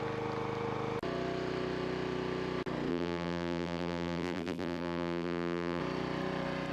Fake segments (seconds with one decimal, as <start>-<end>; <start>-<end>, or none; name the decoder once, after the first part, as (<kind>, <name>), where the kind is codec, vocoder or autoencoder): 2.9-5.8 (vocoder, BigVGAN v2)